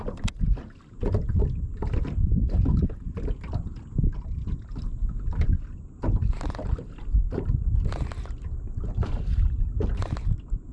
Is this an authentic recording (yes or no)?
yes